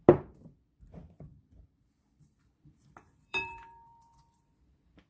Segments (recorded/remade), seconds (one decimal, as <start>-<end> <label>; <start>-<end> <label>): 0.0-1.3 recorded; 1.3-4.4 remade; 4.4-5.1 recorded